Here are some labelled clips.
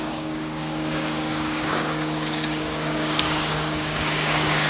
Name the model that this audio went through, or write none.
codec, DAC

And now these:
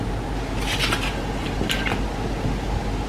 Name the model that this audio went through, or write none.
none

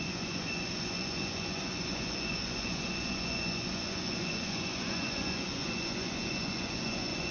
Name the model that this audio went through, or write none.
vocoder, Vocos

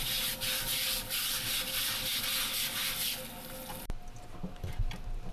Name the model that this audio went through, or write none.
none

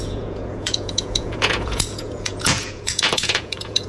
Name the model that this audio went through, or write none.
vocoder, Vocos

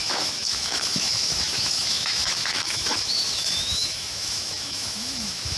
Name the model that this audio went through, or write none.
autoencoder, DAC-VAE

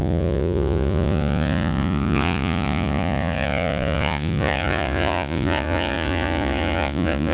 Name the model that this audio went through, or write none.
vocoder, Vocos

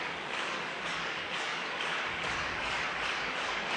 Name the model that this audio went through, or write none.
codec, DAC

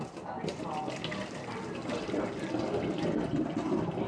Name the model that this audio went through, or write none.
none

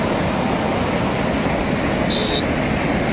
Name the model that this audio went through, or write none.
none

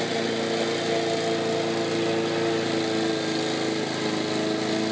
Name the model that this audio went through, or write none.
none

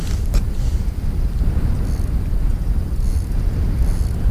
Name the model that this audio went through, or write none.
none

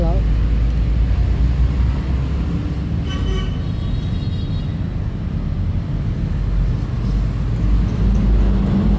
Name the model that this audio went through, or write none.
none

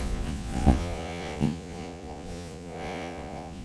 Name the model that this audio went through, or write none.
vocoder, Vocos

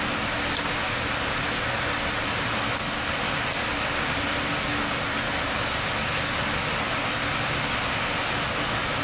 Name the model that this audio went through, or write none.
none